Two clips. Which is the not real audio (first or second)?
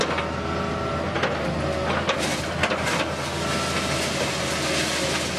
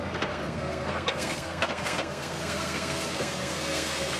second